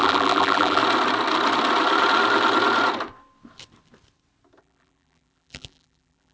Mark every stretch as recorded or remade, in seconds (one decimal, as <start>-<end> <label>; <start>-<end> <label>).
0.0-0.8 remade; 0.8-4.6 recorded; 4.6-6.3 remade